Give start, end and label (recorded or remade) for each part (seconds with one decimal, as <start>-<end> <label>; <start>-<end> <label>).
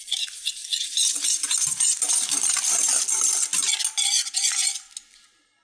0.0-5.6 recorded